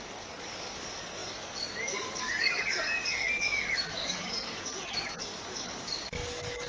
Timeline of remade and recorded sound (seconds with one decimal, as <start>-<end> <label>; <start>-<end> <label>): 0.0-6.7 remade